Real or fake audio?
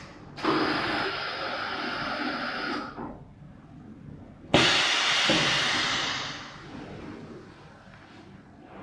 real